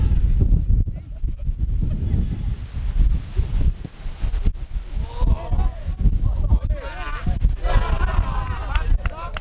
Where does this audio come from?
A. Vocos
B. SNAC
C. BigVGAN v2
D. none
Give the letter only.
D